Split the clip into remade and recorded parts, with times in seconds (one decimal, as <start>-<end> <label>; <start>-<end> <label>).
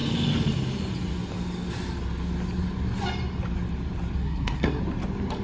0.0-4.2 recorded; 4.2-4.8 remade; 4.8-5.4 recorded